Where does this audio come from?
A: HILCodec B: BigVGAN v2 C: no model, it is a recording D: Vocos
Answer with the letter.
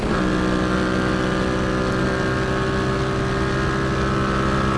C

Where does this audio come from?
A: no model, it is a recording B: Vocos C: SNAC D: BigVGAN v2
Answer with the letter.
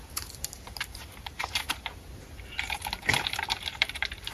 D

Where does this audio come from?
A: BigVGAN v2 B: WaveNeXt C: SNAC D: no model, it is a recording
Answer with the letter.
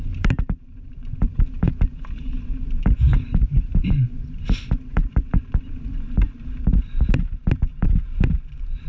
A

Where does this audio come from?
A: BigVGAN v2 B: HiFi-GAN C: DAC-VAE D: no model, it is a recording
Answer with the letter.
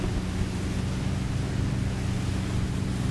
D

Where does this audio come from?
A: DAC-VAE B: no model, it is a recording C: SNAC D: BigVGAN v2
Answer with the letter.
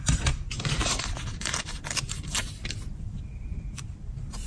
D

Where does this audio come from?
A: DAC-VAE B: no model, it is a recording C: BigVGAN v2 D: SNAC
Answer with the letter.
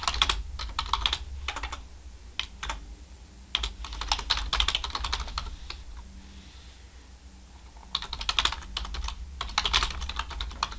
B